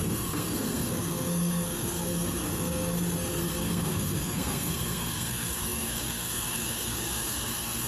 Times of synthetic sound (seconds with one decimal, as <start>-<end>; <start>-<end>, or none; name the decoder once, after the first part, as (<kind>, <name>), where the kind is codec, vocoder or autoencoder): 0.0-7.9 (codec, SNAC)